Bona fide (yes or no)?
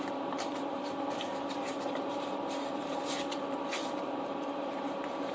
no